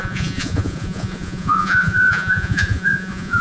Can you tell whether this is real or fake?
fake